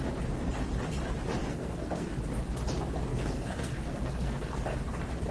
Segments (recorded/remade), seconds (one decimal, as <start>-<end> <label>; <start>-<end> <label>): 0.0-1.4 recorded; 1.4-2.1 remade; 2.1-3.1 recorded; 3.1-4.6 remade; 4.6-5.3 recorded